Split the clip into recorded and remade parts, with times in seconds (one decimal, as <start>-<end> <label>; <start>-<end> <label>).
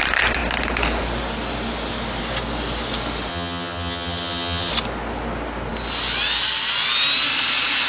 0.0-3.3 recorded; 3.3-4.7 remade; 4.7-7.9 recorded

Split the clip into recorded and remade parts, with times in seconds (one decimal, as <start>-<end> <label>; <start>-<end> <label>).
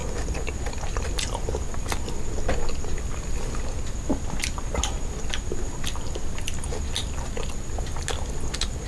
0.0-8.9 recorded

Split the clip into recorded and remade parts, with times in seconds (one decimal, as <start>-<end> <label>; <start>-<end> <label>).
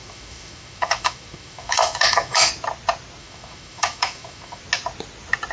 0.0-2.5 remade; 2.5-3.2 recorded; 3.2-4.6 remade; 4.6-5.5 recorded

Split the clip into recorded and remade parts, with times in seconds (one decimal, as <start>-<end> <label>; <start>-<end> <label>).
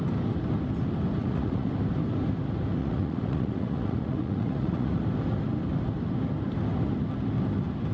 0.0-1.2 recorded; 1.2-1.7 remade; 1.7-2.8 recorded; 2.8-4.9 remade; 4.9-7.9 recorded